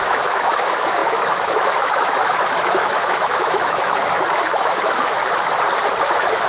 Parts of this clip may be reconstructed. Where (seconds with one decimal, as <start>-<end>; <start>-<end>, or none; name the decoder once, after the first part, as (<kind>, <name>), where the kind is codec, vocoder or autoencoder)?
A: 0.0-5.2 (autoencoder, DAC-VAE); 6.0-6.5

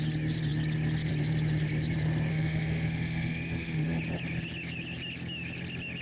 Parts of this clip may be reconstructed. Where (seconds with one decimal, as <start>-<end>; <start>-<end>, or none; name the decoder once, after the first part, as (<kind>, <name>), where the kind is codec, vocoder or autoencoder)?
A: 2.3-4.0 (autoencoder, DAC-VAE)

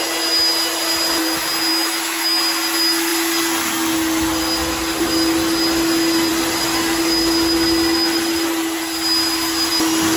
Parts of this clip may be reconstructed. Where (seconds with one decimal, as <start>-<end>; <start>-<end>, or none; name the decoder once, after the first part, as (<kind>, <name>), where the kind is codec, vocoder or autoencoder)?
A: 1.7-2.4 (autoencoder, DAC-VAE)

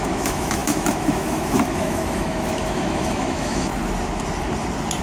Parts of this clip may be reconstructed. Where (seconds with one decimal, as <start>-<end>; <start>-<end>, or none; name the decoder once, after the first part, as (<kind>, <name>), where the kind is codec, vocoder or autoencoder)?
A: 0.0-3.7 (autoencoder, DAC-VAE)

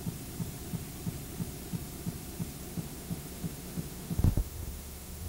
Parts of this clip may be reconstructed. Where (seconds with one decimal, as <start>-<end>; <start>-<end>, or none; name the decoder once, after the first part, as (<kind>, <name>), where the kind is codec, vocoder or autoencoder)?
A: 2.7-5.3 (autoencoder, DAC-VAE)

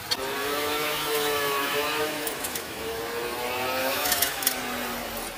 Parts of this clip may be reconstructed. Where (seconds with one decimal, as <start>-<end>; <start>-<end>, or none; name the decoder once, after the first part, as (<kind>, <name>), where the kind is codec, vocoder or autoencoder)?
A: 0.4-3.0 (autoencoder, DAC-VAE); 3.8-4.4

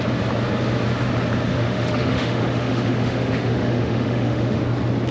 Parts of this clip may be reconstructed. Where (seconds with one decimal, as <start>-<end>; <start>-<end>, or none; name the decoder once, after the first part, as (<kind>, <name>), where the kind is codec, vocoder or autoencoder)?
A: 1.5-4.6 (autoencoder, DAC-VAE)

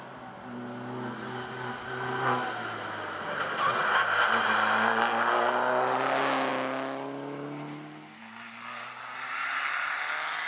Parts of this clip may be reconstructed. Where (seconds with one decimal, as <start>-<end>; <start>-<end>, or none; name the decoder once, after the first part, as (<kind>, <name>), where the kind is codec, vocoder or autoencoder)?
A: none